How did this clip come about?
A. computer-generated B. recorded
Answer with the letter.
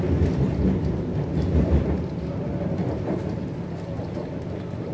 B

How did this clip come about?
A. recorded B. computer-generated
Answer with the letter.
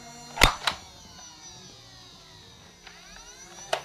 A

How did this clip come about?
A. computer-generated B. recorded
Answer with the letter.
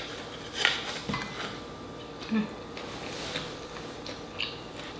B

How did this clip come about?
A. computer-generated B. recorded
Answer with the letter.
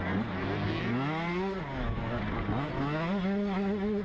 B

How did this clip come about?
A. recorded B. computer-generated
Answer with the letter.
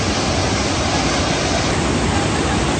A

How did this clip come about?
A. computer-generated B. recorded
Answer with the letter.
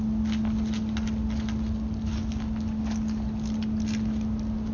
B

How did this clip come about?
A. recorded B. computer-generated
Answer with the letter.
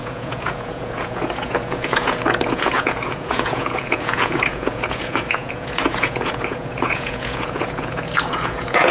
B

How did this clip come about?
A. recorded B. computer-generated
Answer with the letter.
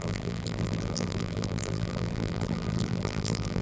B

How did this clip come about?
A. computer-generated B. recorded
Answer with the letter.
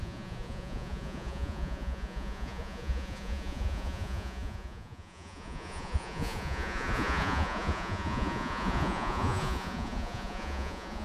A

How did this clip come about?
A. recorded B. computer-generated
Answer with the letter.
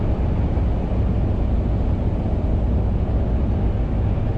A